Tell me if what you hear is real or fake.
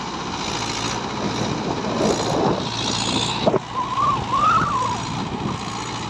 real